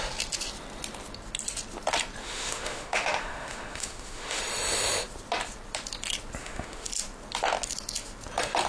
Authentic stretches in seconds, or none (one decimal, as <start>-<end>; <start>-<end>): 0.0-2.2; 4.4-6.4; 6.9-8.7